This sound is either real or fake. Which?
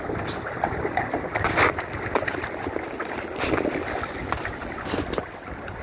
real